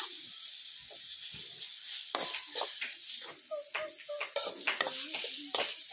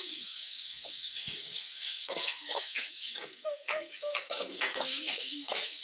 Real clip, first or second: first